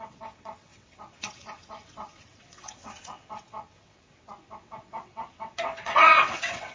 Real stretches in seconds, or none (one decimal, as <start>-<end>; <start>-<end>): none